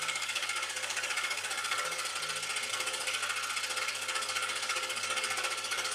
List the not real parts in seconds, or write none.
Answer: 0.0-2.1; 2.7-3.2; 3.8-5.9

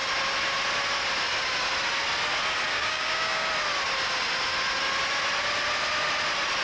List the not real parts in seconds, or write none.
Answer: 2.7-3.5